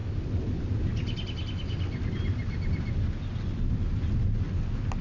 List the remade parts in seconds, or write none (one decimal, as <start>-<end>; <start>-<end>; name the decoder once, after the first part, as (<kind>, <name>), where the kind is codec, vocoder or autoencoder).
none